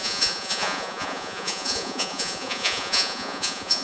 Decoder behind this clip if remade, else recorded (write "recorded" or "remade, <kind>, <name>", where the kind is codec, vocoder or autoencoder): remade, vocoder, Vocos